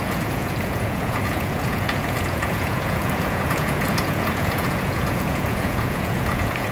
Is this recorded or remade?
remade